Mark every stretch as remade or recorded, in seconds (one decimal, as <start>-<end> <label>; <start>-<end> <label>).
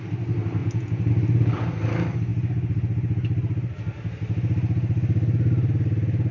0.0-0.6 recorded; 0.6-1.1 remade; 1.1-6.3 recorded